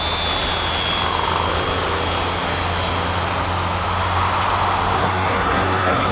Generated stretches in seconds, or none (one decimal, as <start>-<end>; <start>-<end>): 5.0-6.1